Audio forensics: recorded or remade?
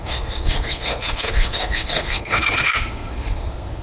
remade